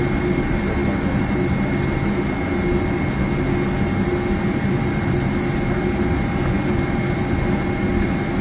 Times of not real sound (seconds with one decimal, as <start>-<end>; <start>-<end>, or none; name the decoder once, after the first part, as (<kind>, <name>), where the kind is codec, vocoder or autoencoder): none